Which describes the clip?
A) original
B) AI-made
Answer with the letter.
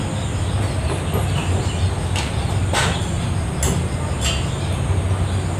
A